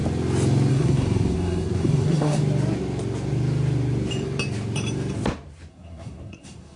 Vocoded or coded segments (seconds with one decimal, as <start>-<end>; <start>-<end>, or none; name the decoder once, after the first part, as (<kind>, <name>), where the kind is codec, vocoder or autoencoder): 0.7-2.4 (codec, SNAC); 5.7-6.8